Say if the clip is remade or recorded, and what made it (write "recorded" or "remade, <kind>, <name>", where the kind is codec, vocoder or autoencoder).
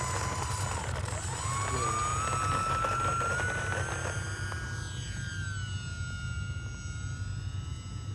recorded